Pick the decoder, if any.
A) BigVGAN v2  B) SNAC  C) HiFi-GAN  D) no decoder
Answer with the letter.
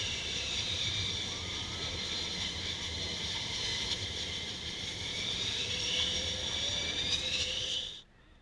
A